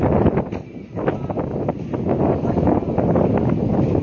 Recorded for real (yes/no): yes